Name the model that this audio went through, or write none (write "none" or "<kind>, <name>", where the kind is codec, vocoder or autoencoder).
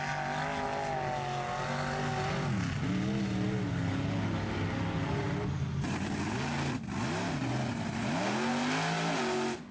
none